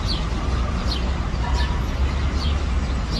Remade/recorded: recorded